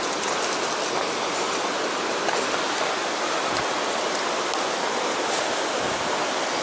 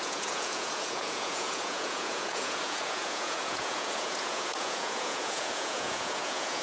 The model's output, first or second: second